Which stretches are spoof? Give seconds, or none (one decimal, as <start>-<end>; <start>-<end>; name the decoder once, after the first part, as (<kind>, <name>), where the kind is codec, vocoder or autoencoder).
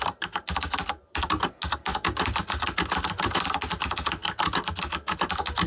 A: none